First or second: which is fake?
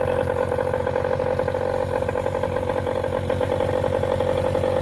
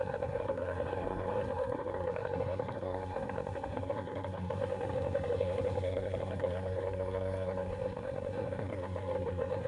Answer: second